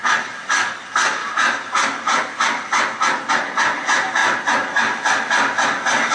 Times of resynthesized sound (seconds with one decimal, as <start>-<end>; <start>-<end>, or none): none